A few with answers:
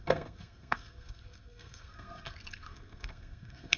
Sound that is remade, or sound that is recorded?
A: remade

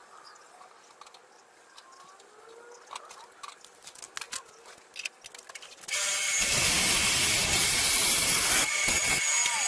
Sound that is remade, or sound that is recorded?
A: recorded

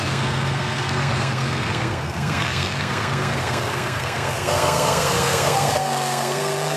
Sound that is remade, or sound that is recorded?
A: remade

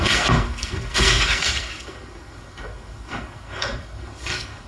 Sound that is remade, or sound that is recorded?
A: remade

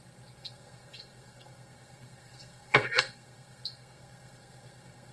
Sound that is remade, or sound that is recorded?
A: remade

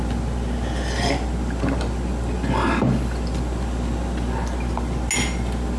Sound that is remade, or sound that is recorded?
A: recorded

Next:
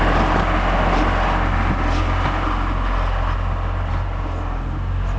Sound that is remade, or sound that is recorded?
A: recorded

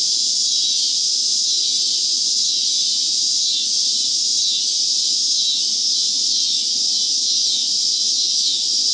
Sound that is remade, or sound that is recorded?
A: recorded